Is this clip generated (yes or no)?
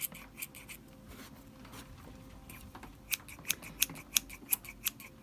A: no